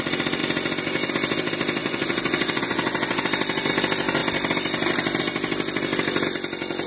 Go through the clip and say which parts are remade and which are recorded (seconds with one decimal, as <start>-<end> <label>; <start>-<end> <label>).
0.0-1.8 recorded; 1.8-3.2 remade; 3.2-6.9 recorded